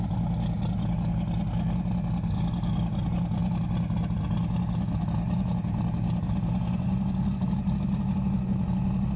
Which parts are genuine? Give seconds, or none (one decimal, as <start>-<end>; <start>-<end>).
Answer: 0.0-9.2